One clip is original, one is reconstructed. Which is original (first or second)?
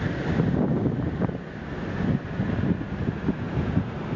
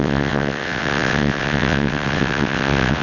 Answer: first